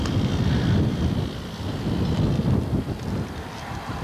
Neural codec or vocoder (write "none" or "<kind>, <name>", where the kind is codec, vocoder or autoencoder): none